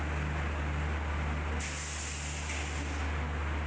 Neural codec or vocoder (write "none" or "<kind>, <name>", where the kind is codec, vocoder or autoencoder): none